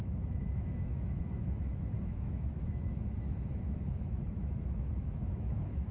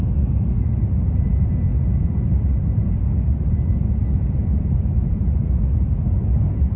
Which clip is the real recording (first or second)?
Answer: second